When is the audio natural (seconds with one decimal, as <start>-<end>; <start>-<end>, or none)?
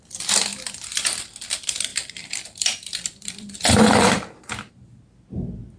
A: 0.0-0.5; 1.2-1.9; 4.7-5.8